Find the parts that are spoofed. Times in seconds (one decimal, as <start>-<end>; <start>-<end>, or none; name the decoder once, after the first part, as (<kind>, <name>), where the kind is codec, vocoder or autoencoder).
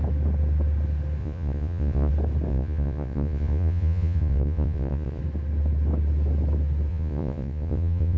1.2-2.1 (vocoder, Vocos); 2.5-5.2; 6.9-8.2